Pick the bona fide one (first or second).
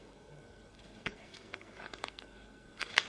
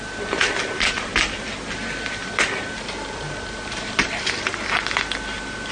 second